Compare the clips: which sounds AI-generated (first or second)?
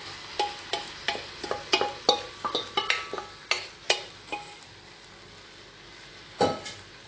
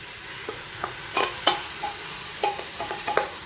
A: second